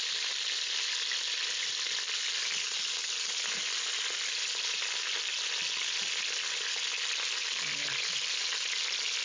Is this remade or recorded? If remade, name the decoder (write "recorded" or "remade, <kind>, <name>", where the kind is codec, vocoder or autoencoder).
recorded